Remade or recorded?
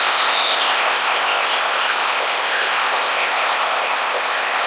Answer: remade